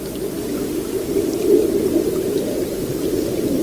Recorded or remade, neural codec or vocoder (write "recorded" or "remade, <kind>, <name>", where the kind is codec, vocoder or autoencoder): recorded